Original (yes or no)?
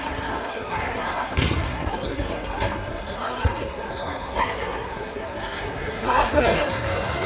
no